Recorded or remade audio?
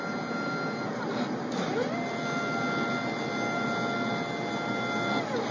recorded